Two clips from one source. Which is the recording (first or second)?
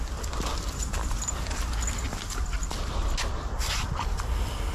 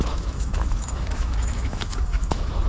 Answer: first